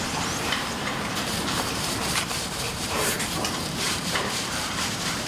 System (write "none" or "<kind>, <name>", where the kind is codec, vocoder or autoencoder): vocoder, BigVGAN v2